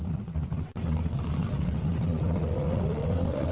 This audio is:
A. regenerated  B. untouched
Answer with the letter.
A